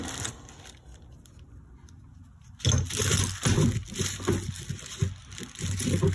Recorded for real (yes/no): yes